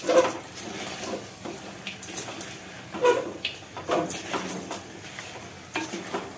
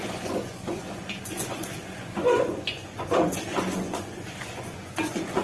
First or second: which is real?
first